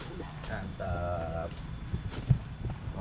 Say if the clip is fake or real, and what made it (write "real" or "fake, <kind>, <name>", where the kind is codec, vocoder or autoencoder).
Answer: fake, vocoder, BigVGAN v2